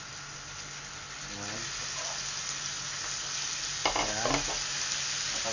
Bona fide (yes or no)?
yes